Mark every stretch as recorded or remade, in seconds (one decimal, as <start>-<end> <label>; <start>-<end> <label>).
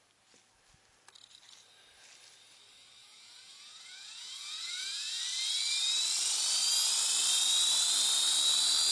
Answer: 0.0-3.0 recorded; 3.0-5.2 remade; 5.2-8.9 recorded